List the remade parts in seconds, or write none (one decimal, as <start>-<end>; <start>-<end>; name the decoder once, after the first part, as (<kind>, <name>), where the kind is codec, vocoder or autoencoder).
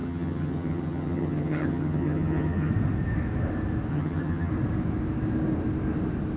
0.0-2.7 (vocoder, HiFi-GAN); 3.9-4.5